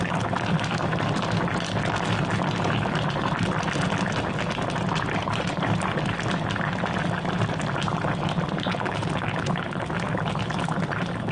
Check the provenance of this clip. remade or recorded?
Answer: recorded